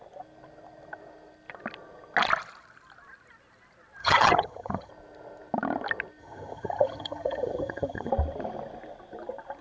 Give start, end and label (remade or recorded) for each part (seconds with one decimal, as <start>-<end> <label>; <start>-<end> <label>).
0.0-4.0 recorded; 4.0-4.9 remade; 4.9-6.2 recorded; 6.2-8.1 remade; 8.1-9.6 recorded